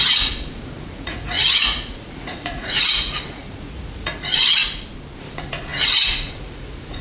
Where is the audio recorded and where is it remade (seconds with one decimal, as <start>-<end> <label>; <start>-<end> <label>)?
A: 0.0-4.6 remade; 4.6-5.2 recorded; 5.2-7.0 remade